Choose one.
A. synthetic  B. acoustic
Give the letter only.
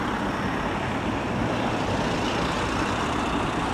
A